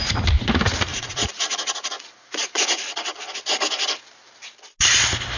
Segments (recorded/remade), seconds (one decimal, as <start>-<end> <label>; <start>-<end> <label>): 0.0-0.9 recorded; 0.9-3.3 remade; 3.3-5.4 recorded